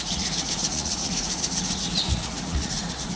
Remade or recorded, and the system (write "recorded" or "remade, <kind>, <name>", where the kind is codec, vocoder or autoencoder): remade, vocoder, Vocos